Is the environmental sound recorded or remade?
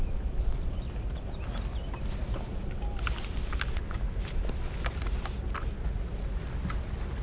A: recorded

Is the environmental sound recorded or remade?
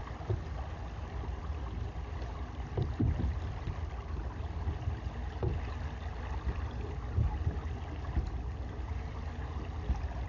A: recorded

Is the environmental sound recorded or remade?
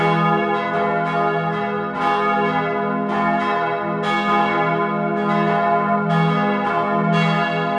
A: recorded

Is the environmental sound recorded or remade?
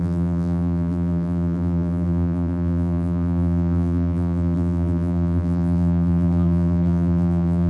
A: remade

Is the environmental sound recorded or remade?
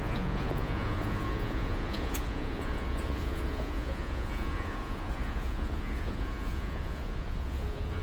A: remade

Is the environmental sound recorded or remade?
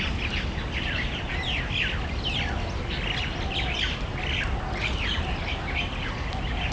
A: recorded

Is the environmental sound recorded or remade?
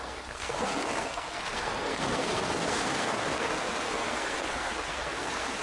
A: remade